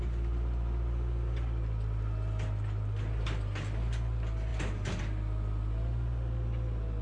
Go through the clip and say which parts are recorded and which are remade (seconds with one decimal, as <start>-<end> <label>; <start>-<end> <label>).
0.0-7.0 recorded